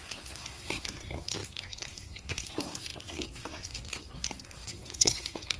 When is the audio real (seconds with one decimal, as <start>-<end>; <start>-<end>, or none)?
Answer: none